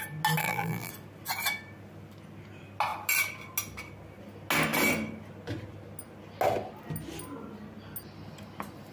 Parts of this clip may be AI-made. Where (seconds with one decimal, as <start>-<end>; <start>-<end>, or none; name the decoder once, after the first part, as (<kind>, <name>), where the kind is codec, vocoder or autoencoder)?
0.4-0.9 (vocoder, BigVGAN v2)